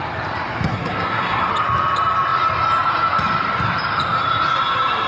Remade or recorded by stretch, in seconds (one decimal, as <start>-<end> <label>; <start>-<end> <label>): 0.0-0.7 recorded; 0.7-1.5 remade; 1.5-5.1 recorded